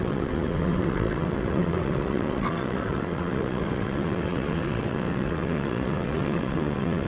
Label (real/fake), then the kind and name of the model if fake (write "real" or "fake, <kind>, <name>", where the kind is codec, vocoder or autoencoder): fake, vocoder, WaveNeXt